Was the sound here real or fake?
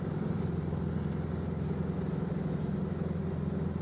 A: real